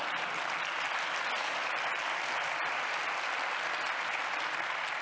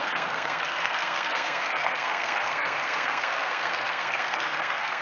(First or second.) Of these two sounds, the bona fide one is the first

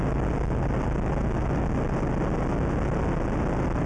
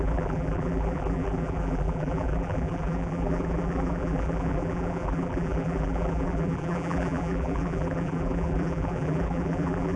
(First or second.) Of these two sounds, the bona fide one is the first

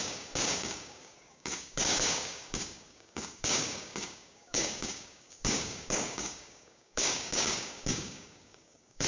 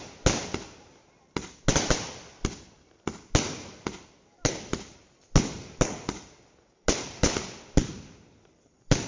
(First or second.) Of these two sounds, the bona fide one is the second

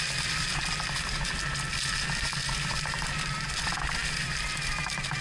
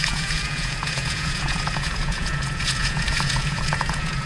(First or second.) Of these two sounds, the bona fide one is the first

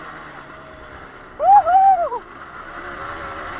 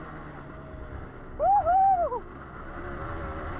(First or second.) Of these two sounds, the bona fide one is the second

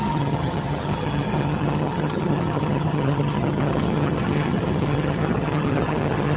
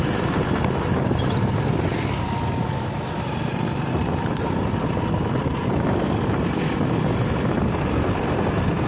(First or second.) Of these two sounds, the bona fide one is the second